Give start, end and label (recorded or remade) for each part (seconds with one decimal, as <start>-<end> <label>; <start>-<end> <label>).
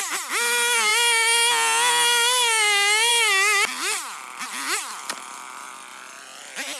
0.0-6.8 recorded